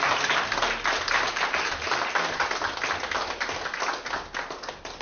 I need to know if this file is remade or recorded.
recorded